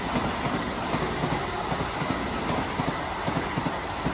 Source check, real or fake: real